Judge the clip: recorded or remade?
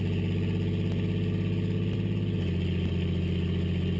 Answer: recorded